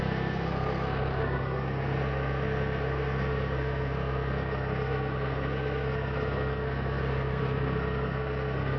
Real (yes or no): no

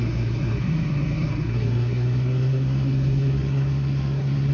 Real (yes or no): no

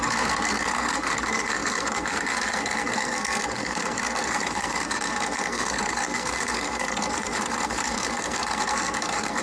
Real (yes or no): no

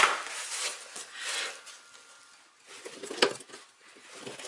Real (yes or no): yes